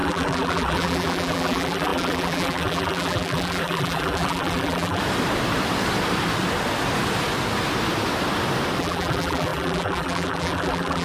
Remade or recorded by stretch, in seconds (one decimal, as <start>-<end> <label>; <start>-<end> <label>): 0.0-5.0 remade; 5.0-8.8 recorded; 8.8-11.0 remade